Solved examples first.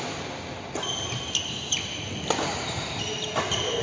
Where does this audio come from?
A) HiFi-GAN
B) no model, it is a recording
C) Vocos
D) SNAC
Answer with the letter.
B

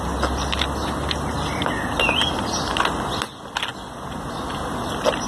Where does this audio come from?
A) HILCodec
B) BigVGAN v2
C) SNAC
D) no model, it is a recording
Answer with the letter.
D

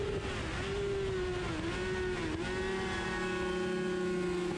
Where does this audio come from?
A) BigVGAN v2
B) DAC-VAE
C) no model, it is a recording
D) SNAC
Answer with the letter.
C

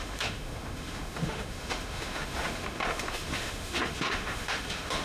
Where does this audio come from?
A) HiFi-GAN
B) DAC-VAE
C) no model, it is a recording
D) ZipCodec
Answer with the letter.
B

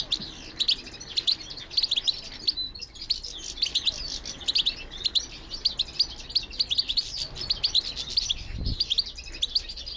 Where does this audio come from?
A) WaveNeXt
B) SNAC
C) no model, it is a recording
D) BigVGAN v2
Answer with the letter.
C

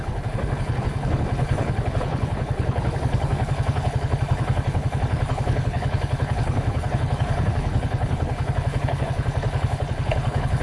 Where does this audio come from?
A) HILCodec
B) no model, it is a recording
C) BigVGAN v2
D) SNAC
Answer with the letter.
A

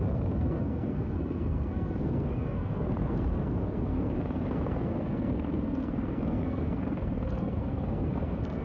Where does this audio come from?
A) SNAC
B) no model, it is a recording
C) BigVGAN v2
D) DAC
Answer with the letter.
A